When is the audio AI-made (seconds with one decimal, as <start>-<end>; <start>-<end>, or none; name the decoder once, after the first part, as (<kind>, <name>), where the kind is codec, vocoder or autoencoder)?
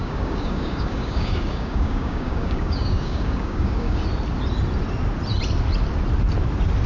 0.0-4.0 (codec, DAC)